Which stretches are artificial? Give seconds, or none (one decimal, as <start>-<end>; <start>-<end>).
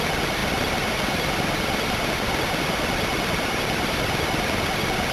none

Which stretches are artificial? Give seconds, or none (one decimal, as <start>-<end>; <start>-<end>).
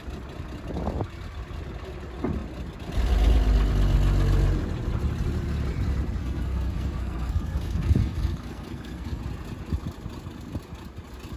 6.2-9.2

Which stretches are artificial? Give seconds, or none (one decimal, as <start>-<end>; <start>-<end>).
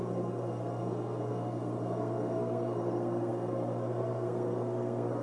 0.0-5.2